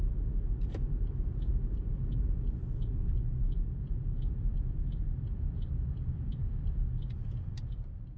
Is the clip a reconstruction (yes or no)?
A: no